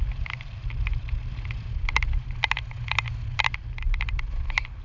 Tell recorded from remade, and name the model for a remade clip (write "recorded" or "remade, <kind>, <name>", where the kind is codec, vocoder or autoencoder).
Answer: recorded